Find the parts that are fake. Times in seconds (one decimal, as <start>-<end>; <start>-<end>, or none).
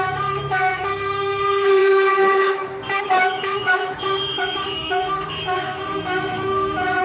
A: 0.0-7.0